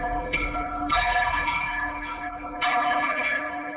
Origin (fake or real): fake